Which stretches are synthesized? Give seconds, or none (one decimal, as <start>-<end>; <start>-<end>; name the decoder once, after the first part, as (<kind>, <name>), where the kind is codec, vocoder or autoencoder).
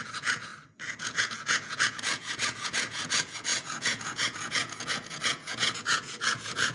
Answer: 0.0-0.5 (vocoder, Vocos); 1.0-6.7